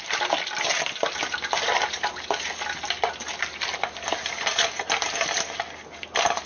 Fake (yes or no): no